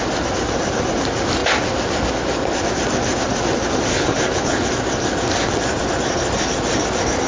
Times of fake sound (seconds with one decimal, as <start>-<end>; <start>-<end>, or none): 3.9-4.7